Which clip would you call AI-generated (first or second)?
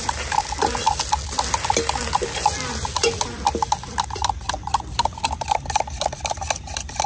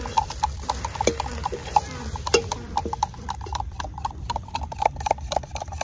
second